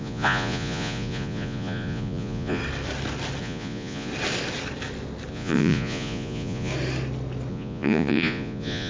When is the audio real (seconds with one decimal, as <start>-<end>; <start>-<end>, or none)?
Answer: 2.6-3.4; 4.1-5.3; 6.7-7.5